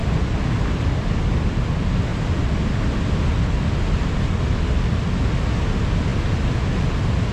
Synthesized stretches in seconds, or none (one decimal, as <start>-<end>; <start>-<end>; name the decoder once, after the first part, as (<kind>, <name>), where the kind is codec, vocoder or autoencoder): 0.0-1.7 (vocoder, BigVGAN v2)